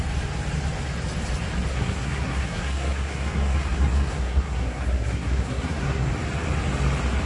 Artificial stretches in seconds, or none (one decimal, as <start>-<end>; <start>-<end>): 1.7-6.1